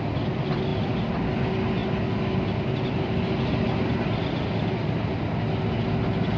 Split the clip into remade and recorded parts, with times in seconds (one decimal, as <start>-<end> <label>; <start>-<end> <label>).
0.0-6.4 recorded